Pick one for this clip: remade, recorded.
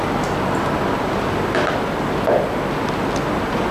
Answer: recorded